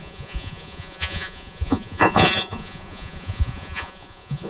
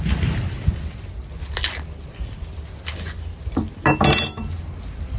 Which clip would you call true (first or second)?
second